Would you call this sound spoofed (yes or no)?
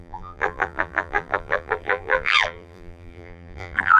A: yes